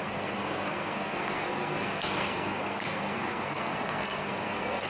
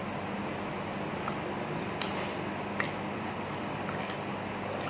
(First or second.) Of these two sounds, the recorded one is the second